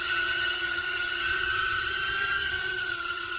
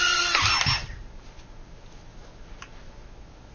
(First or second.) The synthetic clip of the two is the first